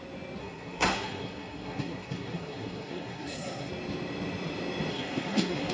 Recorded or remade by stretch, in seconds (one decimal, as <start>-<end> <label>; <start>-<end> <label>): 0.0-0.4 recorded; 0.4-3.7 remade; 3.7-4.9 recorded; 4.9-5.7 remade